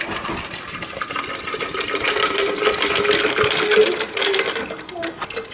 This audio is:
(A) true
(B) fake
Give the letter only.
A